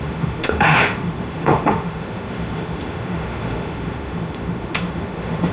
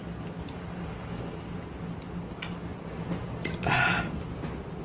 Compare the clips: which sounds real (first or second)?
second